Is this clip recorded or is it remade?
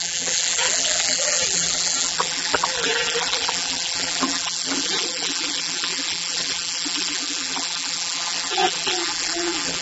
remade